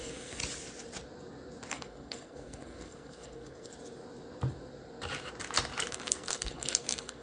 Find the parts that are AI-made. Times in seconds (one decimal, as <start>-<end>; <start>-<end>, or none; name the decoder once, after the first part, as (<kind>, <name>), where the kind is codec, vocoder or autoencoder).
0.0-0.4 (codec, SNAC); 1.7-3.7; 5.9-7.2